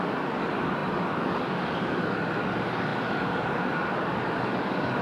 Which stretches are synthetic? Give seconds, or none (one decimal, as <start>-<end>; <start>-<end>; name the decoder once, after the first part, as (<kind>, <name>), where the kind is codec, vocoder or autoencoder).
0.0-5.0 (codec, DAC)